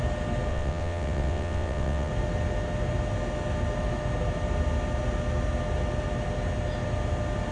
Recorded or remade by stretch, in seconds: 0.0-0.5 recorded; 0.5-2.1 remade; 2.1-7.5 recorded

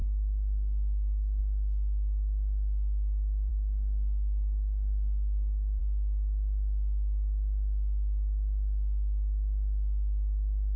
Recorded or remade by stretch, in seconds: 0.0-1.4 remade; 1.4-3.5 recorded; 3.5-5.8 remade; 5.8-10.8 recorded

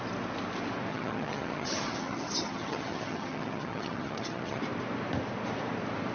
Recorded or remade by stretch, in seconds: 0.0-0.9 recorded; 0.9-4.6 remade; 4.6-6.1 recorded

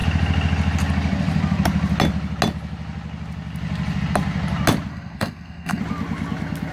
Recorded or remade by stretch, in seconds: 0.0-4.9 recorded; 4.9-5.8 remade; 5.8-6.7 recorded

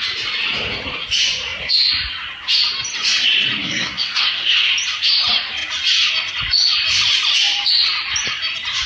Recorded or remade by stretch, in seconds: 0.0-3.6 recorded; 3.6-4.7 remade; 4.7-8.9 recorded

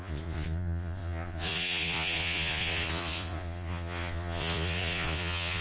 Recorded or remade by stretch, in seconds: 0.0-5.6 remade

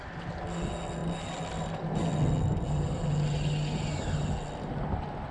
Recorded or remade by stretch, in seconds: 0.0-5.3 recorded

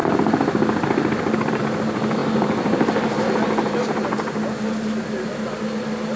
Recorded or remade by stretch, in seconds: 0.0-6.2 recorded